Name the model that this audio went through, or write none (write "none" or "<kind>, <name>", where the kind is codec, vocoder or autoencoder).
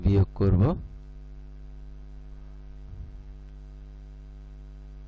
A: none